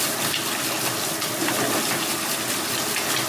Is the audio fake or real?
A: real